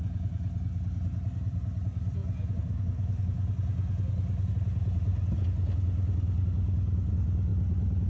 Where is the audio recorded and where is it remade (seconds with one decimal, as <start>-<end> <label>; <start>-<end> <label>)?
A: 0.0-8.1 recorded